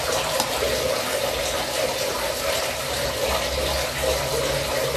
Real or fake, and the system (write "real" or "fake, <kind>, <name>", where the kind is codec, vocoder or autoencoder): real